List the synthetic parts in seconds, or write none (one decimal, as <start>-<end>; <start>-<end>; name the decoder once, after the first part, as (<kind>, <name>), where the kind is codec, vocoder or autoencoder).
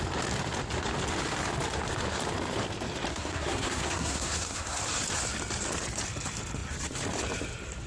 3.1-4.8 (codec, SNAC)